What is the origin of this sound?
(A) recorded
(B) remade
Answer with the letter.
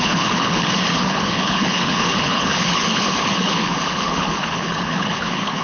B